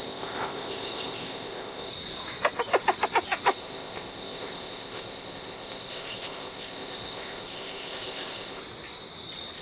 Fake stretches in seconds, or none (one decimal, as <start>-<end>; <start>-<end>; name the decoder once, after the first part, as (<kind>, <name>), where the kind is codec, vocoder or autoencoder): 0.0-1.9 (codec, ZipCodec); 3.5-8.6